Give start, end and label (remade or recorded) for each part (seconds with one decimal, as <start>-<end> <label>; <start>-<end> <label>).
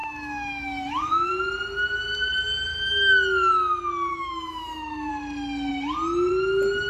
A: 0.0-1.3 remade; 1.3-4.1 recorded; 4.1-5.1 remade; 5.1-6.9 recorded